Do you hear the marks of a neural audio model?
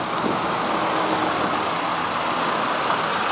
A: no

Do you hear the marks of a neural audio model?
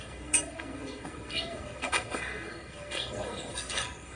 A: yes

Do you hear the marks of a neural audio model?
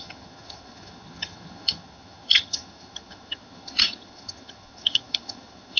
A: yes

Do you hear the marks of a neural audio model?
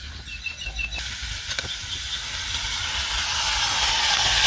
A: no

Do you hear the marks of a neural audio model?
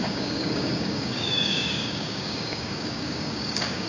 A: yes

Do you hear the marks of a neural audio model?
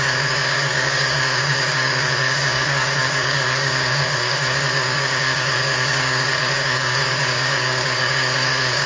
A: yes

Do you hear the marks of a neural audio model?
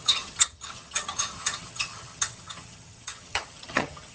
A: yes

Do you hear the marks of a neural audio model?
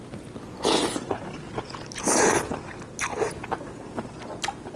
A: no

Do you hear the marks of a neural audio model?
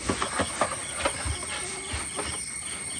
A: no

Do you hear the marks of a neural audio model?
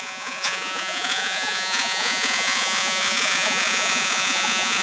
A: yes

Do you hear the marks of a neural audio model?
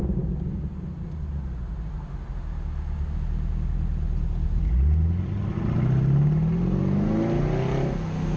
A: no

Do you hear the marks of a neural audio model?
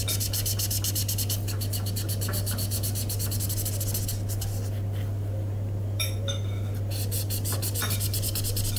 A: no